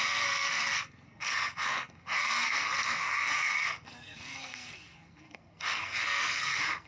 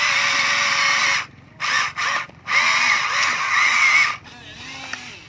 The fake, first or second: first